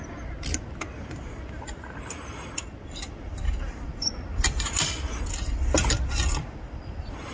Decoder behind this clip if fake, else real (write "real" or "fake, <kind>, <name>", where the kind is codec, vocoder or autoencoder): real